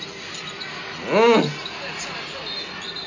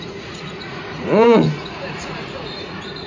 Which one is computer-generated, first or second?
second